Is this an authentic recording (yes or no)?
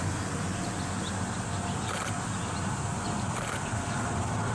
yes